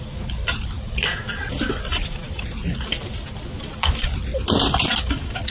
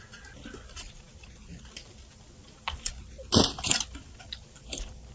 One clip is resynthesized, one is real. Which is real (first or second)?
second